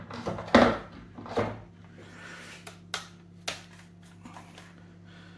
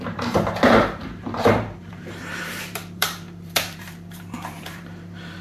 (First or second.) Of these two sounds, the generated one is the second